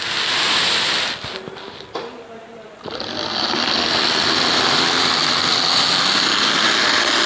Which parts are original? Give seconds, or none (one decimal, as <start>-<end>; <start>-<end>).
0.0-7.3